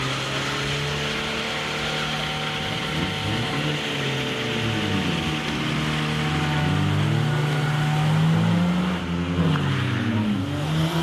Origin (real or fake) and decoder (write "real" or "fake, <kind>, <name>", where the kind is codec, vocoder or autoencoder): real